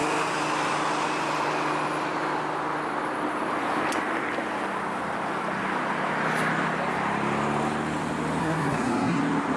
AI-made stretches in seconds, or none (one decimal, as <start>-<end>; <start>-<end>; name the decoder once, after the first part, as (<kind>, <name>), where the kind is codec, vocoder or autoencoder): 8.4-9.2 (codec, SNAC)